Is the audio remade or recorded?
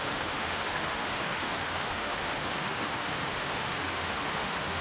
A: remade